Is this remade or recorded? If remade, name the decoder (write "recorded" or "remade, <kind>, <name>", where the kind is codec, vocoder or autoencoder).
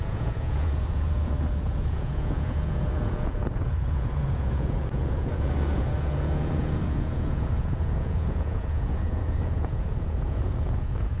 remade, vocoder, Vocos